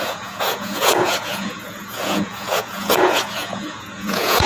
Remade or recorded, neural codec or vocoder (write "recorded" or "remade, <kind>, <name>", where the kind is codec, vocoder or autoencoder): remade, vocoder, Vocos